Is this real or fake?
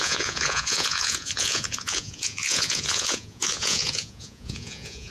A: fake